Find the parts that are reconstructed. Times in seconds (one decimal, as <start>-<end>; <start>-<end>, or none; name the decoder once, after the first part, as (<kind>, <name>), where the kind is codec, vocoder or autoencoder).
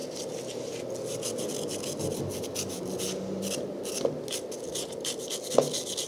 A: none